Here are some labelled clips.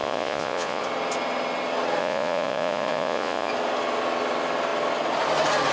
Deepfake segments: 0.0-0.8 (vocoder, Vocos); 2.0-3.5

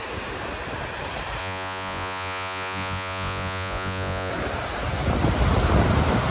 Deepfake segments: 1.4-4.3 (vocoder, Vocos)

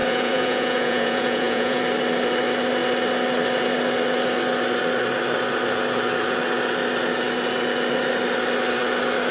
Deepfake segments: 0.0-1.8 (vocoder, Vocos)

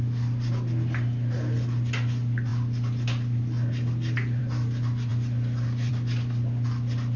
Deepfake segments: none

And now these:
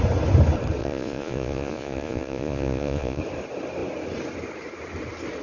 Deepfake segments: 0.8-3.2 (vocoder, Vocos)